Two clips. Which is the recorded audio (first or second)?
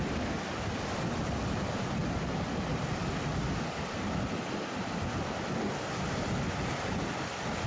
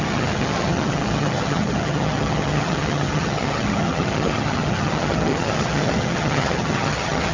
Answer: first